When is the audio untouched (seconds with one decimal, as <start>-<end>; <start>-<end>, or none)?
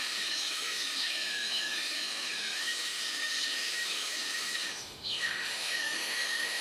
none